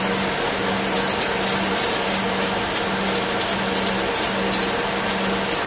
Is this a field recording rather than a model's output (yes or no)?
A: yes